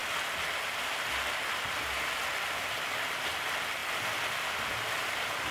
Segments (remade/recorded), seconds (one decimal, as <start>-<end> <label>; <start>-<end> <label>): 0.0-5.5 recorded